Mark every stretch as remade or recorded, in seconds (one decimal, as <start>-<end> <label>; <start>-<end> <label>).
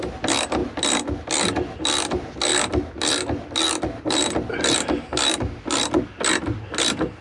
0.0-7.2 recorded